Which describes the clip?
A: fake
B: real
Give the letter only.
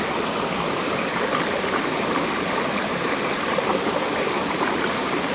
B